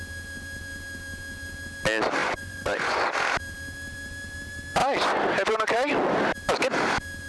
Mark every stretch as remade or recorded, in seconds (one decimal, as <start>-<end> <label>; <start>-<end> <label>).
0.0-2.2 recorded; 2.2-3.0 remade; 3.0-7.3 recorded